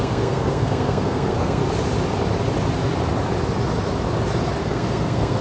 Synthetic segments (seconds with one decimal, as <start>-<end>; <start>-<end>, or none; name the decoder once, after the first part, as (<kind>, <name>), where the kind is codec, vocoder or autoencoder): 0.0-1.6 (codec, SNAC); 4.6-5.4